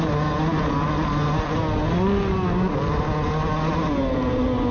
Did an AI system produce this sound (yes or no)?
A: no